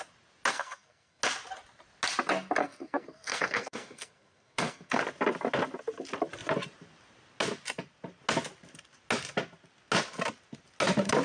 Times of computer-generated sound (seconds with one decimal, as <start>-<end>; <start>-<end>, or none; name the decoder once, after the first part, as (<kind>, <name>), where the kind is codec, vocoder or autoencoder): 0.5-1.2 (codec, SNAC); 2.6-5.0